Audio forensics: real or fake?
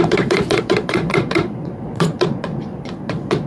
fake